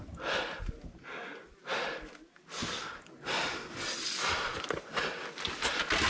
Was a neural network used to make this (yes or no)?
no